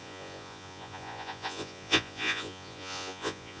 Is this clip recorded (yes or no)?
no